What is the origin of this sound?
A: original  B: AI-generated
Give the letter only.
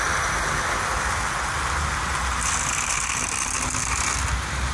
A